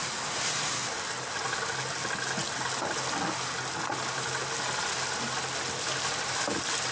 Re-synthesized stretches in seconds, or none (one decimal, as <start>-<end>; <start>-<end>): none